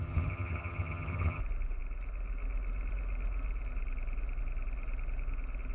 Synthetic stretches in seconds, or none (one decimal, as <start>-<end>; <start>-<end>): 0.0-1.4